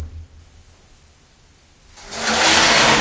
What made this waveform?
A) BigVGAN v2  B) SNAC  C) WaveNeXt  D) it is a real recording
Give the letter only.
D